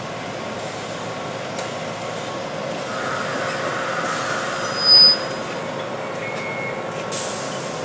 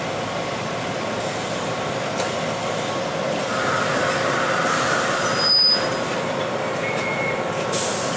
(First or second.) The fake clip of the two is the second